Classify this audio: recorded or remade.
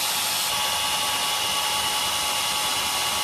recorded